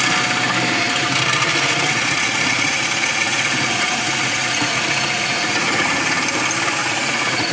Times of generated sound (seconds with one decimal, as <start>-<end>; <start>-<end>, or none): 1.5-6.0; 6.8-7.5